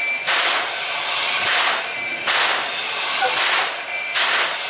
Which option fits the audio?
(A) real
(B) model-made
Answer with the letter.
A